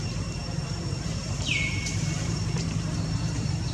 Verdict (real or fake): fake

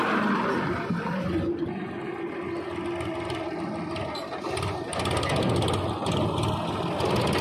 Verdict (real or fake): real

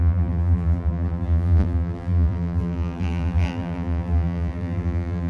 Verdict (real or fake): fake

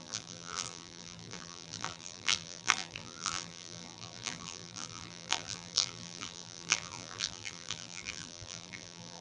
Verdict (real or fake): fake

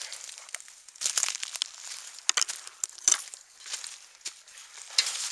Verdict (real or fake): real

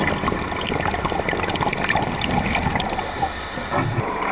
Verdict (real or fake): fake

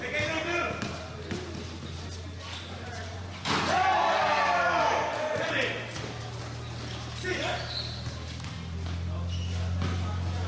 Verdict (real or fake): real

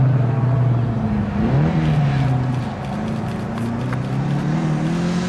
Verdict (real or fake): real